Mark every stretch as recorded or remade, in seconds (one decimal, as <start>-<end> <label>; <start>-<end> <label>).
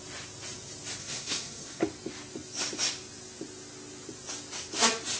0.0-1.0 recorded; 1.0-1.8 remade; 1.8-5.2 recorded